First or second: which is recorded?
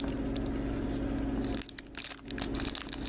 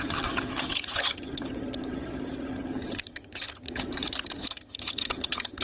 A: first